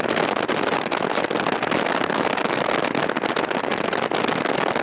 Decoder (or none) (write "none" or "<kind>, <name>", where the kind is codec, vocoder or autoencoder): none